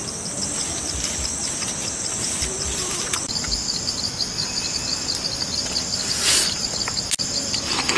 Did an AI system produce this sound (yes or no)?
no